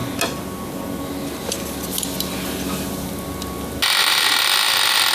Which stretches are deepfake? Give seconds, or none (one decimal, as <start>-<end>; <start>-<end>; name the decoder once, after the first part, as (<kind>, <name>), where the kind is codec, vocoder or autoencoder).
none